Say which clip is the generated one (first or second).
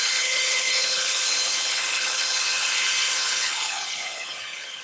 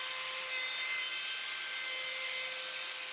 first